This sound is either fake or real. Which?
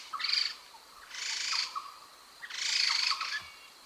real